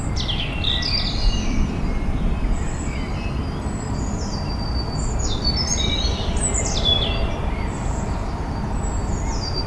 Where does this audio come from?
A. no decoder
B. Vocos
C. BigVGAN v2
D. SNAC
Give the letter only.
A